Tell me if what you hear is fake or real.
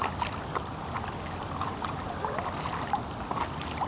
real